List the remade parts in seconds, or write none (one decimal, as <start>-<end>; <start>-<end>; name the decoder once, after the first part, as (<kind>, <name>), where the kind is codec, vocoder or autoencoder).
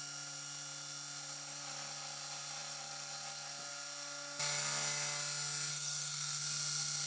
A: 5.7-6.4 (codec, SNAC)